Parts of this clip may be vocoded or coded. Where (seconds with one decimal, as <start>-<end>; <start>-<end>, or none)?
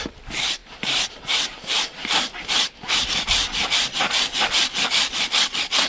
0.0-2.0; 2.9-3.4; 4.9-5.9